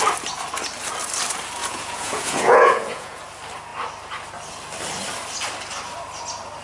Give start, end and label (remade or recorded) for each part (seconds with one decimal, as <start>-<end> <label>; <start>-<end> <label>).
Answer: 0.0-1.6 recorded; 1.6-3.2 remade; 3.2-6.6 recorded